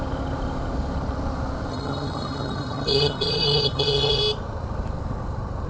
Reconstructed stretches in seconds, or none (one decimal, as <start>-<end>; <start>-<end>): 1.7-4.2